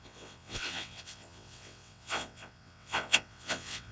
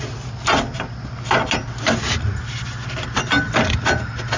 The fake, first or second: first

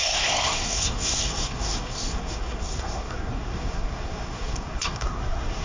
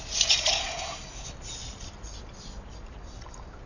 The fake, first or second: first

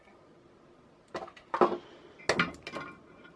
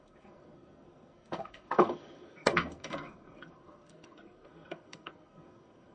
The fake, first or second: second